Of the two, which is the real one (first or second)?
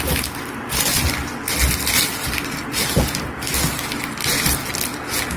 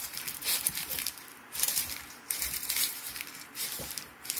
first